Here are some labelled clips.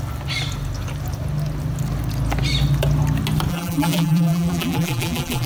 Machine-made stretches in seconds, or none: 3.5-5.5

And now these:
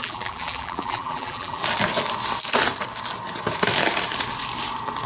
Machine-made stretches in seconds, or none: 0.0-1.6

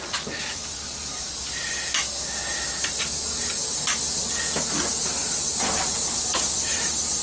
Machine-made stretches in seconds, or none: 0.0-2.0; 6.3-7.2

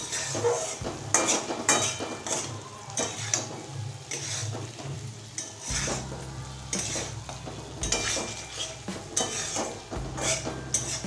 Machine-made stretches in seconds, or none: 1.3-3.0; 4.4-6.2

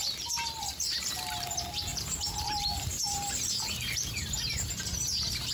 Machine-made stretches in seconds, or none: 1.9-3.8

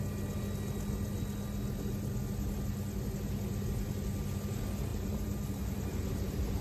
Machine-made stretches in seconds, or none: 4.9-6.6